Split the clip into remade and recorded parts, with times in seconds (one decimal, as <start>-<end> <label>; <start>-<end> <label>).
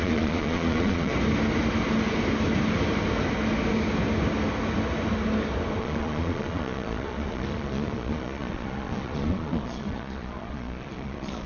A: 0.0-1.1 remade; 1.1-5.8 recorded; 5.8-11.5 remade